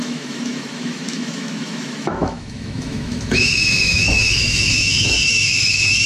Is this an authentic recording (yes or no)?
no